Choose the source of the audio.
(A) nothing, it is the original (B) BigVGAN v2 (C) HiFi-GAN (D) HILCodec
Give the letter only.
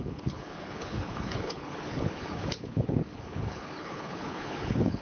D